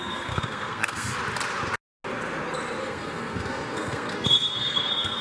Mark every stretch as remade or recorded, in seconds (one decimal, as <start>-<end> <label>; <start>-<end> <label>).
0.0-1.1 remade; 1.1-2.8 recorded; 2.8-5.2 remade